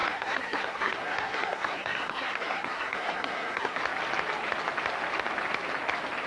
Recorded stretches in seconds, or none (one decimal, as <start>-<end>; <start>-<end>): 3.8-6.3